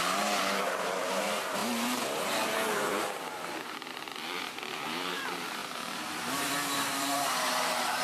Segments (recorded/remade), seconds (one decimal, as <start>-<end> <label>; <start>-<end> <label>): 0.0-8.0 remade